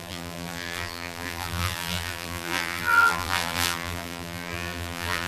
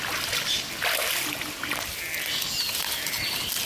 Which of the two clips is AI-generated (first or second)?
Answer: first